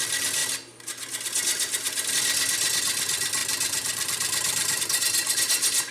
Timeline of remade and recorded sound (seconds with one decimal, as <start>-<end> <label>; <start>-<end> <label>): 0.0-3.4 recorded; 3.4-4.8 remade; 4.8-5.9 recorded